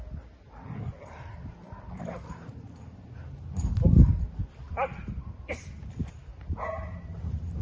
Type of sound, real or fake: real